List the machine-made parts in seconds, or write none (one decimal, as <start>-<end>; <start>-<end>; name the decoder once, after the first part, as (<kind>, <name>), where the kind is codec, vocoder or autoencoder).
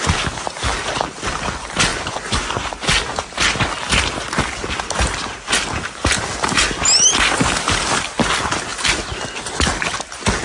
1.9-2.7 (vocoder, Vocos)